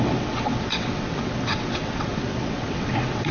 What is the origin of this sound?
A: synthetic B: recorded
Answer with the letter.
A